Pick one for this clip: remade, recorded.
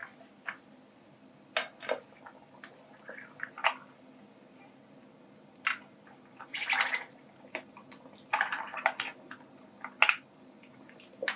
recorded